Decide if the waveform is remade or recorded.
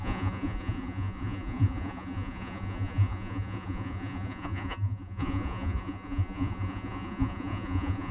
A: remade